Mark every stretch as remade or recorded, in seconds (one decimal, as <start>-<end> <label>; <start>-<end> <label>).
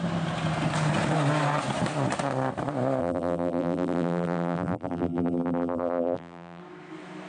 0.0-3.0 recorded; 3.0-6.6 remade; 6.6-7.3 recorded